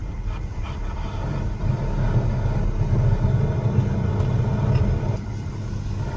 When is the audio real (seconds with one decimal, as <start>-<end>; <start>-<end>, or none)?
1.7-6.2